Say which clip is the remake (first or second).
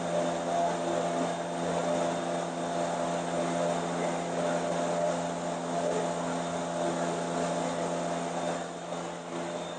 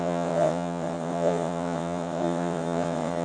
second